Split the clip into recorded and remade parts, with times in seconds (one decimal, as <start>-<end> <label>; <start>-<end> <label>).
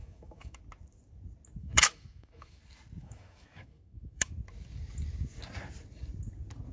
0.0-0.6 remade; 0.6-1.6 recorded; 1.6-2.6 remade; 2.6-3.0 recorded; 3.0-4.3 remade; 4.3-6.7 recorded